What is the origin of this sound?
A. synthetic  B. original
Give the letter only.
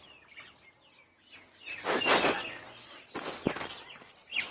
B